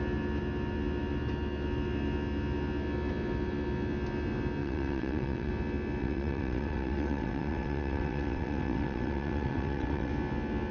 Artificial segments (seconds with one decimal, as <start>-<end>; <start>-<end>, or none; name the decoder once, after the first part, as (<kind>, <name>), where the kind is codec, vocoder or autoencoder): 4.6-5.5 (vocoder, WaveNeXt); 6.0-10.1